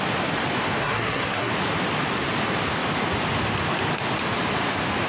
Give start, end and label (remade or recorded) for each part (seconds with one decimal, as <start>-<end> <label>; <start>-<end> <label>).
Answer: 0.0-0.8 recorded; 0.8-1.5 remade; 1.5-5.1 recorded